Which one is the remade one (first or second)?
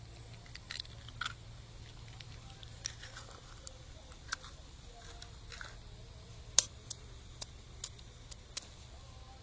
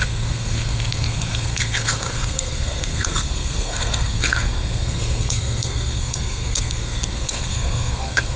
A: second